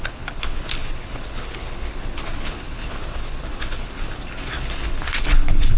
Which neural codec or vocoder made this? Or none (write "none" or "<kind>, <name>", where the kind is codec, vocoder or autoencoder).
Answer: codec, HILCodec